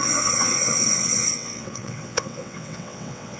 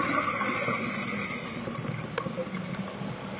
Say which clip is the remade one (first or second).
first